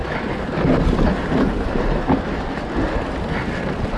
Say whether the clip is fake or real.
real